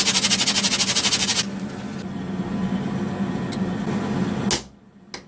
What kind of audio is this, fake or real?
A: real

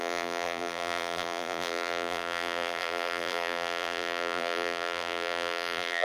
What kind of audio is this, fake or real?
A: fake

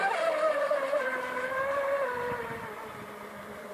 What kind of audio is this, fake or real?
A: fake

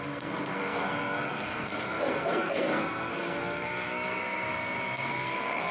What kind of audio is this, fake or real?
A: fake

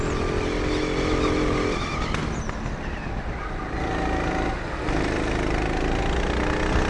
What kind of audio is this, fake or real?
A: real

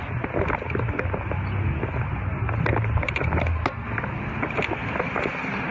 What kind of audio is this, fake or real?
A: real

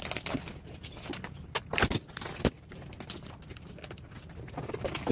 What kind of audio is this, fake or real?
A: real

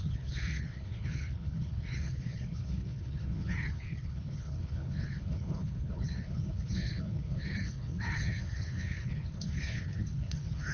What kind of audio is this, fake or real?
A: fake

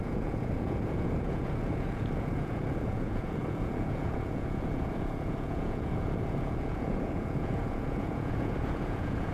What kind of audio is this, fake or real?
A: fake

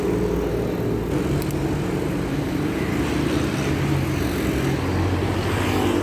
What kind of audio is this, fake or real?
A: real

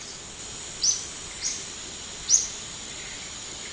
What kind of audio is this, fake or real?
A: real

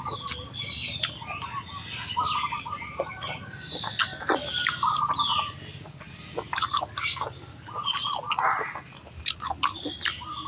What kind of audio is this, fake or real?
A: real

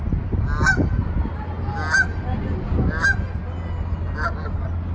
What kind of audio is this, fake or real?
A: real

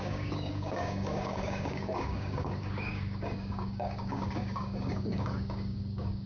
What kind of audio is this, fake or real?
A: fake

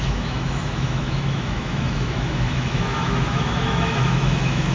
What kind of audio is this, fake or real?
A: fake